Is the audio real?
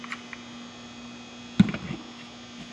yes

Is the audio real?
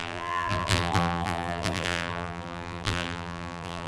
no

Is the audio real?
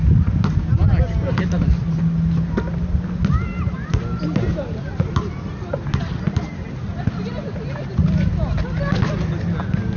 yes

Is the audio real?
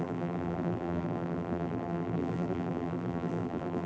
no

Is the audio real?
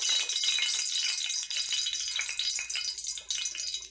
yes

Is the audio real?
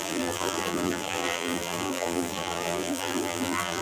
no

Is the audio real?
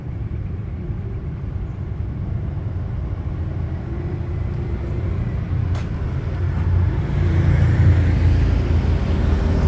yes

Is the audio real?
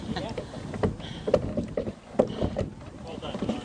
no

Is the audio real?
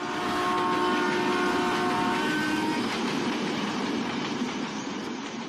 yes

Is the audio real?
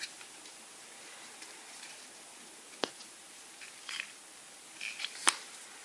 no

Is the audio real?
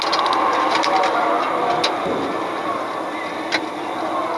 yes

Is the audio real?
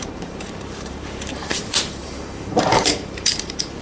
no